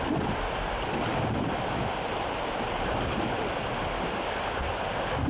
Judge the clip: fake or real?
real